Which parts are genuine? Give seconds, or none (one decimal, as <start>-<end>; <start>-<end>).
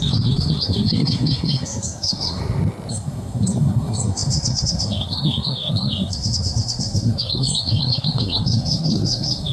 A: 2.4-2.9